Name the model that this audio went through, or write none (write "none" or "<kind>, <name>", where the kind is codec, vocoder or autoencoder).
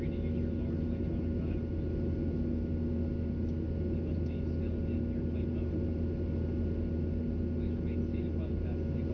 none